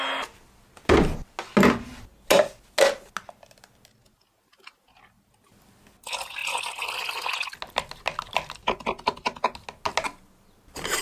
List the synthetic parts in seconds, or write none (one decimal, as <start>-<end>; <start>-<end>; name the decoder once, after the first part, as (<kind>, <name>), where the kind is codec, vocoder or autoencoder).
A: none